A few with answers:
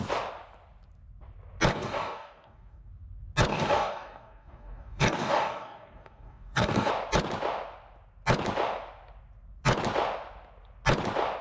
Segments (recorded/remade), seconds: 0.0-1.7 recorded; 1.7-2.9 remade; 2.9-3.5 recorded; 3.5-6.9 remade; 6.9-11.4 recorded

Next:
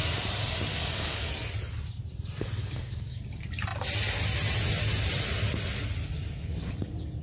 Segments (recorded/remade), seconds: 0.0-0.7 recorded; 0.7-1.3 remade; 1.3-2.6 recorded; 2.6-3.2 remade; 3.2-7.2 recorded

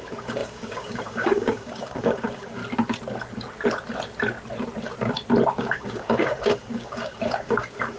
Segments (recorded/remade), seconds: 0.0-2.6 remade; 2.6-5.6 recorded; 5.6-8.0 remade

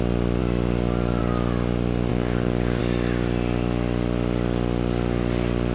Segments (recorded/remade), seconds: 0.0-2.1 recorded; 2.1-2.8 remade; 2.8-5.7 recorded

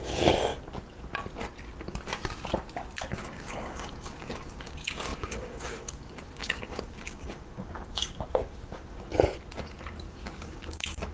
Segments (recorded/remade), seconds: 0.0-0.5 remade; 0.5-3.1 recorded; 3.1-9.1 remade; 9.1-10.1 recorded; 10.1-11.1 remade

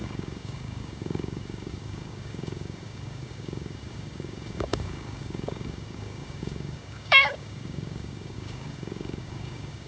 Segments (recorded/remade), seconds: 0.0-9.9 remade